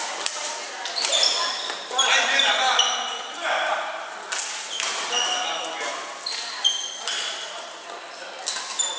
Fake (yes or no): no